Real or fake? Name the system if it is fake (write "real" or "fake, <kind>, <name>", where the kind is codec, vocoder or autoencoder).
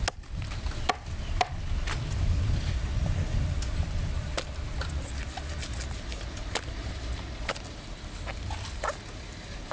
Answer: real